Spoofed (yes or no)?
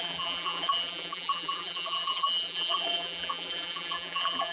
yes